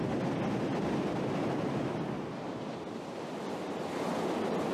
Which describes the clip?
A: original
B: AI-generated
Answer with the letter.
A